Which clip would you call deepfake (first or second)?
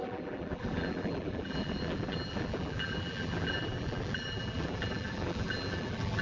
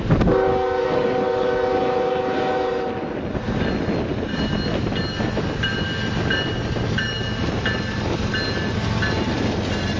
first